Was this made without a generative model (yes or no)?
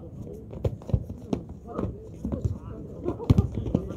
yes